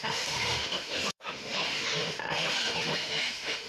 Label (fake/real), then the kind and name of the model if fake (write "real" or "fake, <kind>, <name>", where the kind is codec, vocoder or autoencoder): fake, autoencoder, DAC-VAE